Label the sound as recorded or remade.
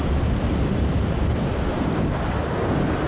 recorded